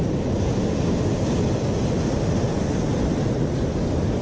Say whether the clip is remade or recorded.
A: recorded